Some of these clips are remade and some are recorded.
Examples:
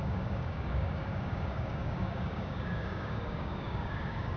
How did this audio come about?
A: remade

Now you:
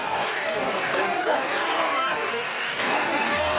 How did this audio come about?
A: remade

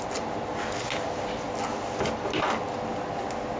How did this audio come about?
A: recorded